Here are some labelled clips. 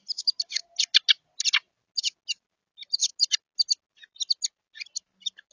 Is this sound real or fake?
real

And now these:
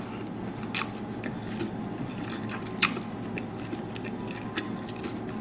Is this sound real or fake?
real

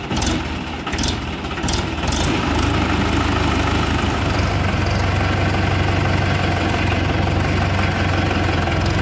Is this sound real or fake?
real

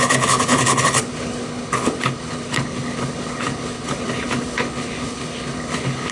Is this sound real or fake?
fake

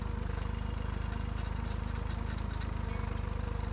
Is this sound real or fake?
real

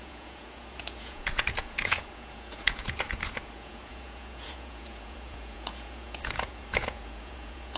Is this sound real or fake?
fake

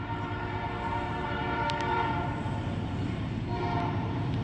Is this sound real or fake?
fake